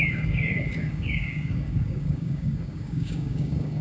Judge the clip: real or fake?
fake